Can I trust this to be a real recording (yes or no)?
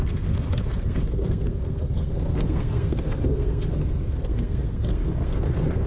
no